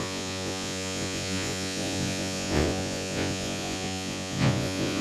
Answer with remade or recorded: remade